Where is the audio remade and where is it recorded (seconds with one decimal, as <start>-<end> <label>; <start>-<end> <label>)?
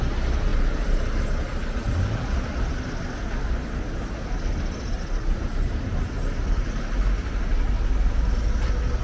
0.0-9.0 recorded